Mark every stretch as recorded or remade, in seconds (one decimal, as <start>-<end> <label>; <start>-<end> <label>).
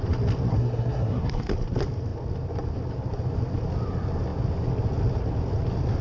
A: 0.0-0.5 recorded; 0.5-1.5 remade; 1.5-6.0 recorded